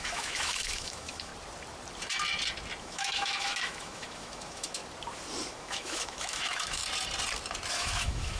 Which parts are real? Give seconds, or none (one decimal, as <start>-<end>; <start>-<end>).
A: 1.3-2.8; 4.8-5.5; 6.8-7.7